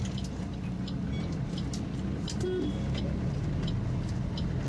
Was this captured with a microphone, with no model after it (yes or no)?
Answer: yes